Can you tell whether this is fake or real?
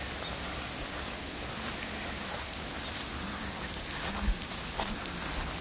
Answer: real